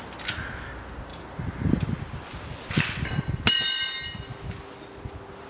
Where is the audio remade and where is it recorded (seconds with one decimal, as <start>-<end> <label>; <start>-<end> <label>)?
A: 0.0-1.1 recorded; 1.1-3.5 remade; 3.5-5.5 recorded